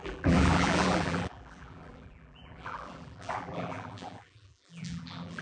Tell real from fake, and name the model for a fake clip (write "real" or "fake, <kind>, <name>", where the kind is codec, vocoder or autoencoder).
fake, vocoder, BigVGAN v2